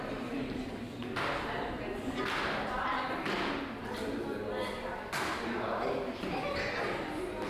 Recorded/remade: recorded